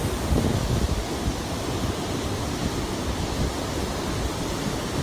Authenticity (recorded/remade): recorded